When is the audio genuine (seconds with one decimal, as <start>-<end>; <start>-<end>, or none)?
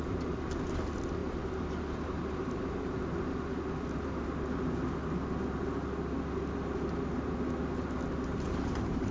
0.0-1.2; 3.0-8.3